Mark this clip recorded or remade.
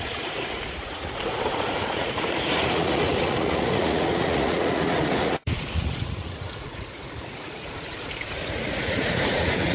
remade